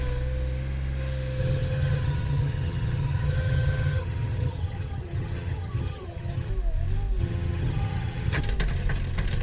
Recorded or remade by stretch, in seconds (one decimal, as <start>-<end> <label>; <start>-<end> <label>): 0.0-1.4 recorded; 1.4-6.5 remade; 6.5-7.2 recorded; 7.2-8.4 remade; 8.4-9.4 recorded

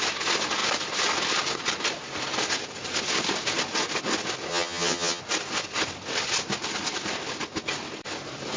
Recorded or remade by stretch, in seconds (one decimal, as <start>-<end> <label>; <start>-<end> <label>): 0.0-4.5 recorded; 4.5-5.2 remade; 5.2-8.6 recorded

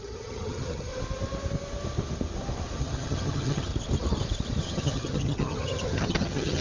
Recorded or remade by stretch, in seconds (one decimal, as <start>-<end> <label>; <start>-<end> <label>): 0.0-0.9 remade; 0.9-2.8 recorded; 2.8-3.7 remade; 3.7-4.6 recorded; 4.6-6.6 remade